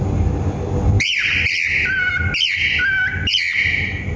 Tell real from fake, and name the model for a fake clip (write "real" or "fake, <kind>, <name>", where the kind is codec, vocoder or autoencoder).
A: real